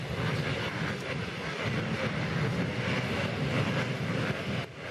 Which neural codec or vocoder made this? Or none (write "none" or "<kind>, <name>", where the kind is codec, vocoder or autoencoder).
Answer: none